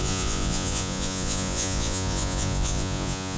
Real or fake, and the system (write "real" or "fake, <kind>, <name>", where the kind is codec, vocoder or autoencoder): fake, vocoder, Vocos